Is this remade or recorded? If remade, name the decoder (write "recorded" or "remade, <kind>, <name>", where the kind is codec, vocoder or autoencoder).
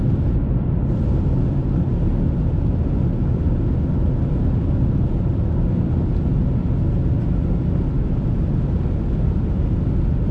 recorded